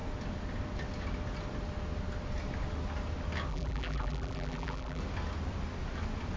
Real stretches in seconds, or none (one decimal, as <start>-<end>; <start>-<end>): 0.0-3.5; 5.0-6.4